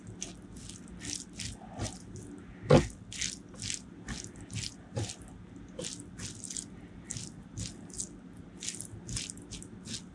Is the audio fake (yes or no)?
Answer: no